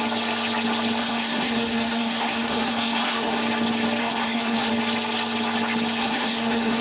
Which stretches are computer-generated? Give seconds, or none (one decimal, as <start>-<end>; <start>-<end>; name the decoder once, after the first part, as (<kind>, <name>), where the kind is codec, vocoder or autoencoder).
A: 1.0-3.4 (codec, SNAC); 4.0-4.7; 6.0-6.8